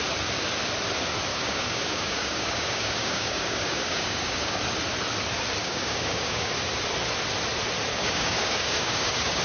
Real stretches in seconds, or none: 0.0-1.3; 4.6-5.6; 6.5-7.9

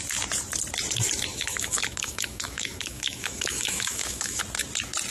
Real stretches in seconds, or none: 0.0-1.3; 4.4-5.1

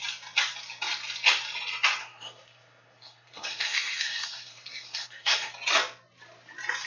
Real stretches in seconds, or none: 0.0-2.0; 5.5-6.9

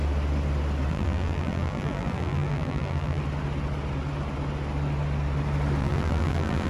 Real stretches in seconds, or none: 0.0-0.9; 3.2-5.8

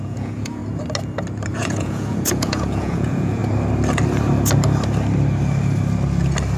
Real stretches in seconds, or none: 0.6-1.5; 3.4-6.6

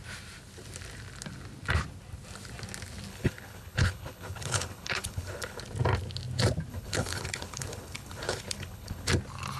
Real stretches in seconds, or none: 0.0-3.1; 5.6-6.7; 9.1-9.6

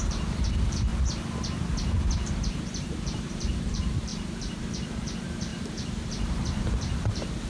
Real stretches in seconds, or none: 0.9-2.4

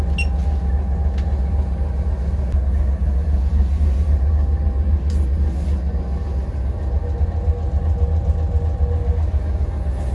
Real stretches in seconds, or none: 0.0-10.1